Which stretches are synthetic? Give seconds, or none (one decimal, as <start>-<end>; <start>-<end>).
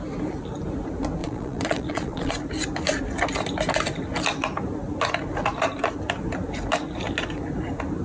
1.2-2.3